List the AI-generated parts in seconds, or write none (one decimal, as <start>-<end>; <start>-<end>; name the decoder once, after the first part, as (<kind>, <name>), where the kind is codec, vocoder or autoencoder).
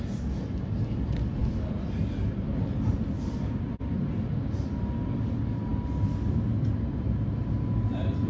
none